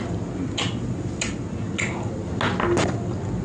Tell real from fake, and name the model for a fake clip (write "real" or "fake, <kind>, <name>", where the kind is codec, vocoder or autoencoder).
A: real